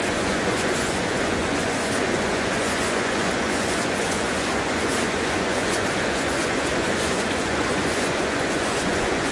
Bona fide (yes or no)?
no